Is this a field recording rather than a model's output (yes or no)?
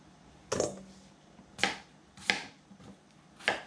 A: yes